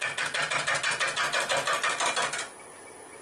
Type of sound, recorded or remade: recorded